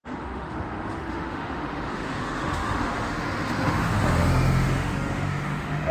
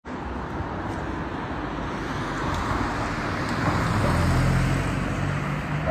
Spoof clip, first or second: first